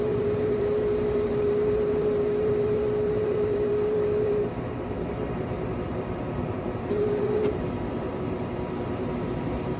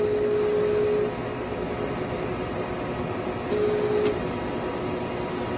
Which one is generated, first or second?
first